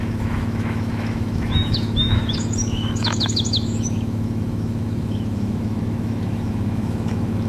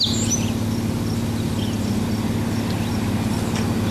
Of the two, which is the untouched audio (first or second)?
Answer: second